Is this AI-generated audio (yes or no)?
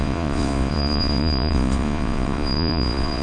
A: yes